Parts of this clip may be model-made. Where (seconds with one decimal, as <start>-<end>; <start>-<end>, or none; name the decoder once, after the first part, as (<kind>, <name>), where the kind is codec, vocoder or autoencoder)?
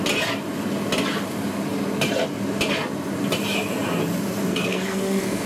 4.5-5.5 (codec, SNAC)